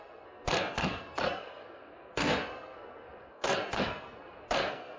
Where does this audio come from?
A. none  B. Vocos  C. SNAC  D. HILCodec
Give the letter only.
C